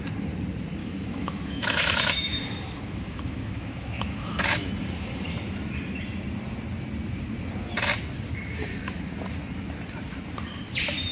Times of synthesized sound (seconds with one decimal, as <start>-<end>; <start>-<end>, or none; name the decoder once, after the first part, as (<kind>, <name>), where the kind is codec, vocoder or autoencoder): 0.8-4.7 (autoencoder, DAC-VAE)

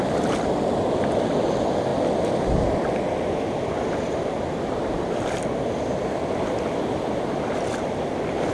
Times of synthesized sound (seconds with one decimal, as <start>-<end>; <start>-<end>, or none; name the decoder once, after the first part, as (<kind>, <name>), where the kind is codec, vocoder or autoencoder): none